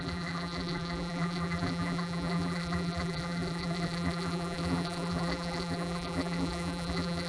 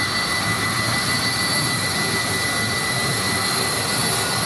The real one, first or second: second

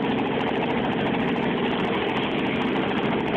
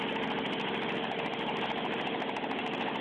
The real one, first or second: second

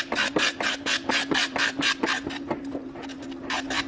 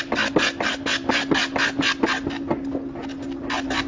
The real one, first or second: second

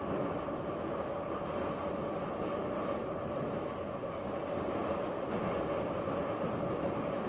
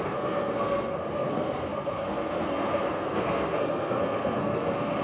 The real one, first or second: first